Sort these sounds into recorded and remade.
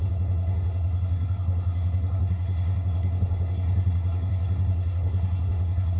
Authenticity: remade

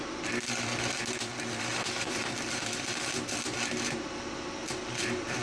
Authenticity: remade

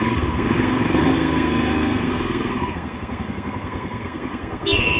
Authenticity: remade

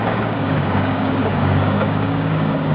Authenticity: remade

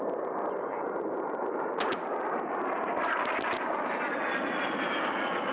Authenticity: remade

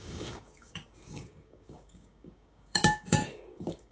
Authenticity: remade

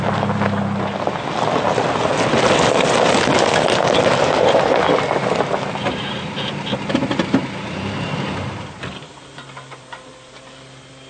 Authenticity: recorded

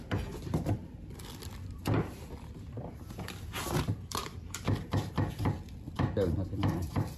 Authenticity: remade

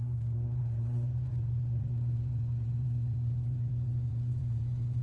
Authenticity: remade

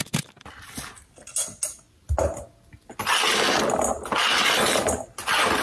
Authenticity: recorded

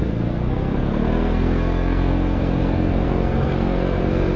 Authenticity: remade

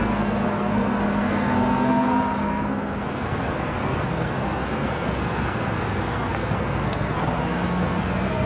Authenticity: remade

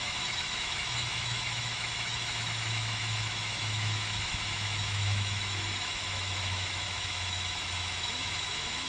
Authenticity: remade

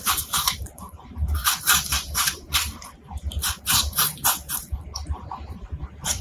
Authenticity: remade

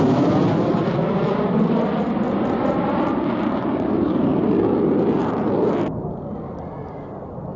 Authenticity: recorded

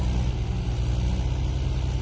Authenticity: recorded